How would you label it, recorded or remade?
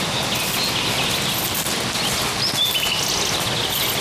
recorded